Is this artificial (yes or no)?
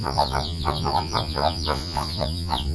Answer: yes